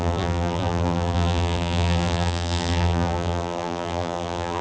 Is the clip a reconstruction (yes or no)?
yes